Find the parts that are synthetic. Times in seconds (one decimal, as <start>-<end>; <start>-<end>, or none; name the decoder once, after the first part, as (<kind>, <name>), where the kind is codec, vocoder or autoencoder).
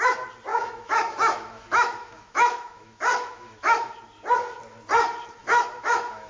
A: 0.5-3.9 (autoencoder, DAC-VAE); 5.4-6.3